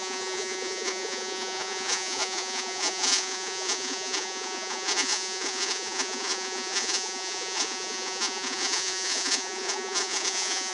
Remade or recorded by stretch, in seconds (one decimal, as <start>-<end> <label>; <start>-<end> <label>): 0.0-10.7 remade